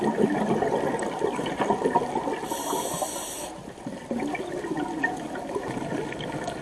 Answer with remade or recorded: recorded